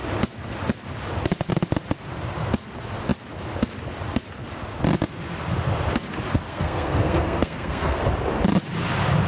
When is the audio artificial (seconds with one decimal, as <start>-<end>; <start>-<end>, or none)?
6.5-8.0